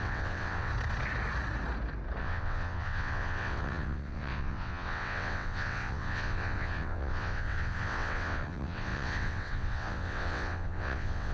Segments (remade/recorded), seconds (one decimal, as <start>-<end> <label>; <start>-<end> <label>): 0.0-0.7 remade; 0.7-2.2 recorded; 2.2-11.3 remade